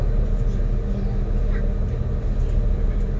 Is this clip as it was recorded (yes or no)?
yes